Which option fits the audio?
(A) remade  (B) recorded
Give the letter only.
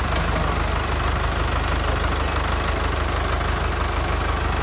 B